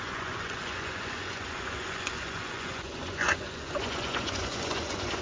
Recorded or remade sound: remade